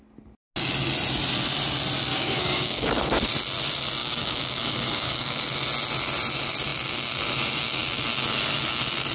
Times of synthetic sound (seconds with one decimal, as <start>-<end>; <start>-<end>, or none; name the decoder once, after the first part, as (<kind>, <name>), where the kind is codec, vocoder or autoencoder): 2.1-3.3 (codec, DAC); 4.0-5.4